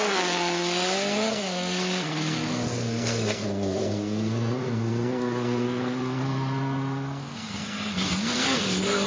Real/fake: fake